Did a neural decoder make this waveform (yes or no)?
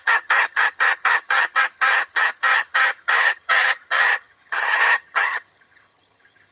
yes